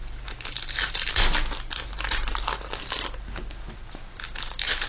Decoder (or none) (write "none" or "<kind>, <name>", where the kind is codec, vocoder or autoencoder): none